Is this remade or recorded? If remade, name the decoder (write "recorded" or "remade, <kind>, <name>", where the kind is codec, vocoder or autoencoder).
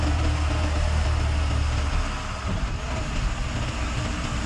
recorded